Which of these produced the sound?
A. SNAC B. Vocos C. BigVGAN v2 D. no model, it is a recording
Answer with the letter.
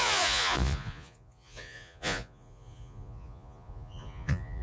B